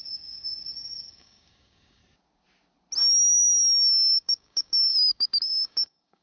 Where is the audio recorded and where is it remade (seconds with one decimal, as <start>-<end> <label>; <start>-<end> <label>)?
0.0-2.0 remade; 2.0-4.1 recorded; 4.1-6.2 remade